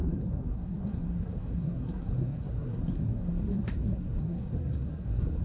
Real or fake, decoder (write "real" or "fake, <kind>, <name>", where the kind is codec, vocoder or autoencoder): fake, codec, SNAC